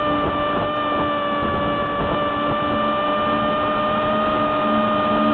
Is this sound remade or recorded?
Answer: recorded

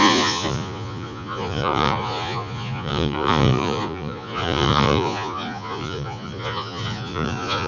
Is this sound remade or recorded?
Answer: remade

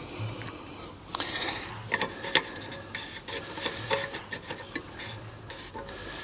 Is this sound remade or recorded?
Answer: recorded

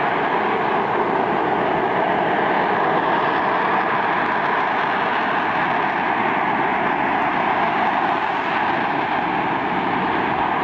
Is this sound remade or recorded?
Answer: recorded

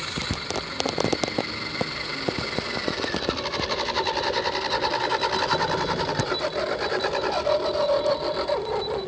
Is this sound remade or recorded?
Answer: recorded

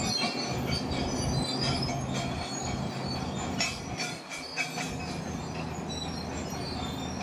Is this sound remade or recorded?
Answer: recorded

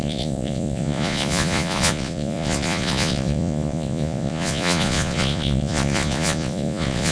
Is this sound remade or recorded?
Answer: remade